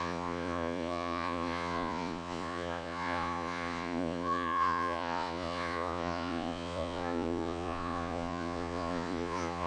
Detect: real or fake fake